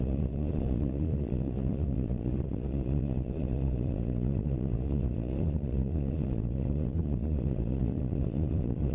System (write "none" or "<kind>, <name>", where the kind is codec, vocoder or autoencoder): vocoder, Vocos